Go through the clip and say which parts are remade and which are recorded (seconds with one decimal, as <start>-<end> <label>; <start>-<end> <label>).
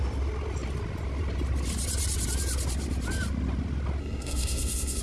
0.0-4.0 recorded; 4.0-5.0 remade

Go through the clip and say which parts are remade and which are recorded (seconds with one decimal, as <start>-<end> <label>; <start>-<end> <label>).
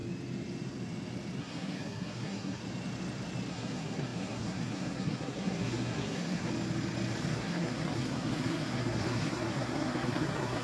0.0-1.4 recorded; 1.4-2.6 remade; 2.6-3.5 recorded; 3.5-6.5 remade; 6.5-7.3 recorded; 7.3-10.6 remade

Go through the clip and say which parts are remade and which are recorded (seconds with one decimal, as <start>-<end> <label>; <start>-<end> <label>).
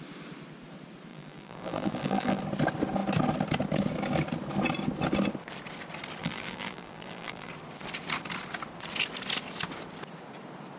0.0-1.1 recorded; 1.1-2.4 remade; 2.4-6.2 recorded; 6.2-7.5 remade; 7.5-10.8 recorded